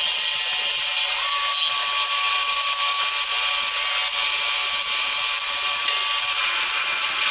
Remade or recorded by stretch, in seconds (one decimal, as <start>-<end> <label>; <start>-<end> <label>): 0.0-7.3 recorded